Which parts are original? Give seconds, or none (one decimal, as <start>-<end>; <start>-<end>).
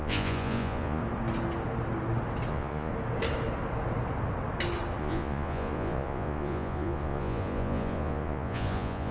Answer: 1.0-2.5; 2.9-5.0